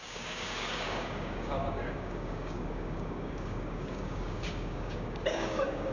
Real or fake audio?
fake